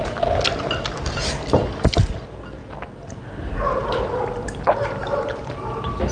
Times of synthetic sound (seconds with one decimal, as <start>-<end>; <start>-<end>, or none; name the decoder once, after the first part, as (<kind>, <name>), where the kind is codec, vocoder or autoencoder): none